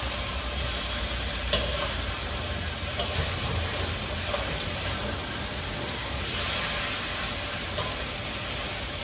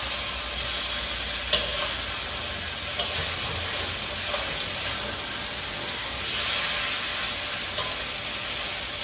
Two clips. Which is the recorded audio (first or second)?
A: second